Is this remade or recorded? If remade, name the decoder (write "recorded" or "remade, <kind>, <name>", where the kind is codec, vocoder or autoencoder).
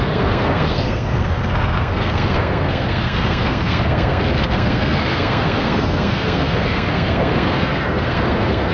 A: remade, codec, SNAC